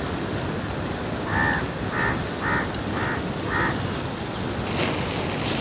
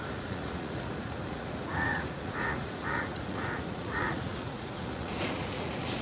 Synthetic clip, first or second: second